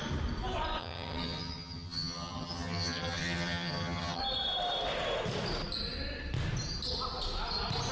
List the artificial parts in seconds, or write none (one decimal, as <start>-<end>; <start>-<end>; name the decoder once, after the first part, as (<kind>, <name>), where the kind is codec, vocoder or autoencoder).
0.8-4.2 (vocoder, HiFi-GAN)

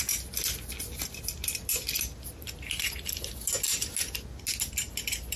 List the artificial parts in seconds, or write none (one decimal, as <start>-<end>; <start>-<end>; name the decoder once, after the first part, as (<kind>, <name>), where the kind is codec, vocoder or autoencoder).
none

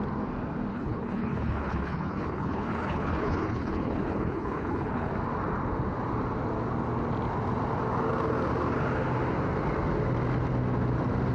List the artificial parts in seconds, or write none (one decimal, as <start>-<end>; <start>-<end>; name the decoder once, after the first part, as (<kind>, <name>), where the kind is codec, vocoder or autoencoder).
0.7-5.1 (codec, HILCodec)

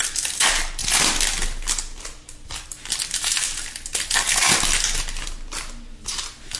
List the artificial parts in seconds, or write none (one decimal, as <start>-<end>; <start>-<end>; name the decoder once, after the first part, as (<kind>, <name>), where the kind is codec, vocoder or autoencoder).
none

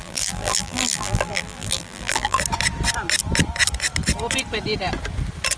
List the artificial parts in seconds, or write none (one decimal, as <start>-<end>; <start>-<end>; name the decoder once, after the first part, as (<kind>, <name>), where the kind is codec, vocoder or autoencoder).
0.0-2.4 (vocoder, BigVGAN v2)

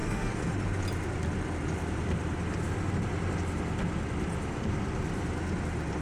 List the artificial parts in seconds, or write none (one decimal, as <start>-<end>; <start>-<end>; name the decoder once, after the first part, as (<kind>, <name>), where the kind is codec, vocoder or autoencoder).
0.0-0.5 (codec, SNAC)